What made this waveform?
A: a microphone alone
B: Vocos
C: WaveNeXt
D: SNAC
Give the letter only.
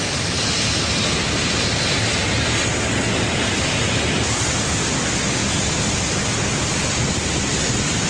A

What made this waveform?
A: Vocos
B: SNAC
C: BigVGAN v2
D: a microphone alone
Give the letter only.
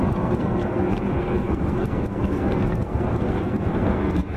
B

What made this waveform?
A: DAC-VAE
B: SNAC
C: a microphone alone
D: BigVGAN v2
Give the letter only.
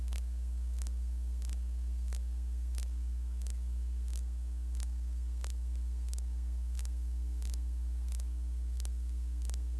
B